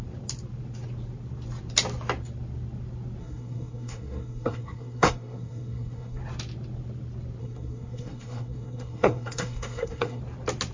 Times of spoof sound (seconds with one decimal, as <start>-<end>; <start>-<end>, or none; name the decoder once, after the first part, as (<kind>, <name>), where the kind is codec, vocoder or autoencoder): 3.2-6.2 (codec, SNAC); 7.4-10.2